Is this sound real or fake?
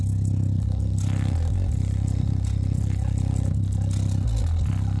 real